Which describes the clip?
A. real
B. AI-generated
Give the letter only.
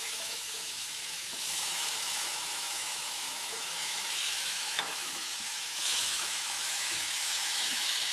B